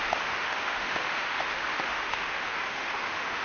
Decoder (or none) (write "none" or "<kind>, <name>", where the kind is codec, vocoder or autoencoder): autoencoder, DAC-VAE